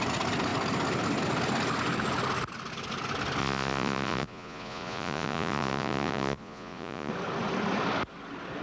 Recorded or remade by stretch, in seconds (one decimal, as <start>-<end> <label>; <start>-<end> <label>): 0.0-3.4 recorded; 3.4-7.1 remade; 7.1-8.6 recorded